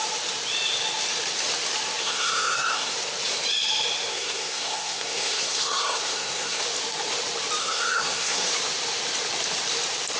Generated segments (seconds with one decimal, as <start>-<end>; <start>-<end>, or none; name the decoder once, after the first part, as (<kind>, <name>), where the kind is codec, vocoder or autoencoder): 2.0-2.9 (codec, SNAC); 4.1-6.6; 7.6-8.5